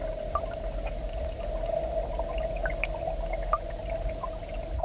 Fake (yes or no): no